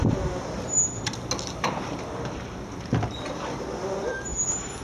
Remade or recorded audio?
recorded